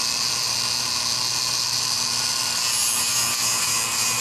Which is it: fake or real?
real